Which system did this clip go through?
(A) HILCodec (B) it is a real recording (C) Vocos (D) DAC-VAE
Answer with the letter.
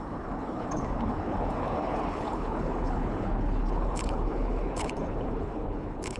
A